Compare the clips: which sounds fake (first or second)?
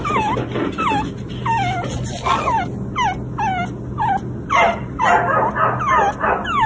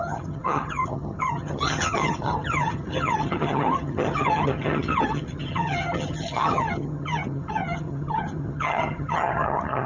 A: second